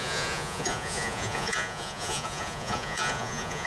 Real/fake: fake